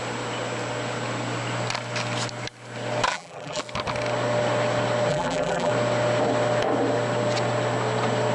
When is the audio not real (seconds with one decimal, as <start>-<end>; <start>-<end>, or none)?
3.1-3.6; 5.1-5.7